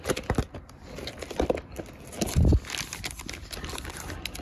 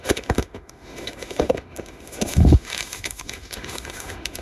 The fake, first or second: second